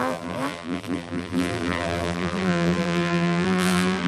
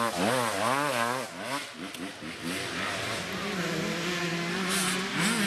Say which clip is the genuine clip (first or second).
second